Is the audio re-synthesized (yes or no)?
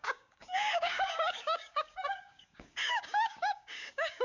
yes